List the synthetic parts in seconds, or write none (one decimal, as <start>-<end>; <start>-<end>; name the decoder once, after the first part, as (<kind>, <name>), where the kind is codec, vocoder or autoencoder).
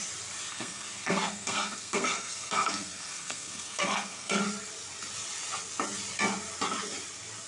0.5-4.4 (codec, SNAC)